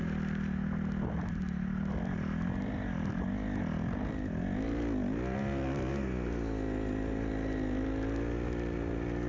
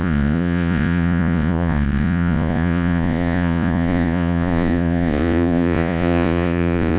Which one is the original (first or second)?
first